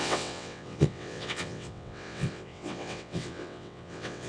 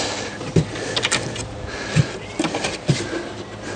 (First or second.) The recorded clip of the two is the second